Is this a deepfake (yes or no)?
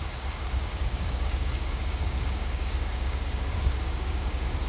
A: yes